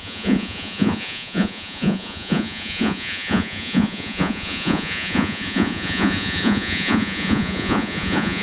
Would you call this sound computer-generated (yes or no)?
yes